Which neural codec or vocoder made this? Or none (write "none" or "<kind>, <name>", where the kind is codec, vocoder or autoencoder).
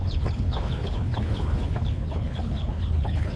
codec, HILCodec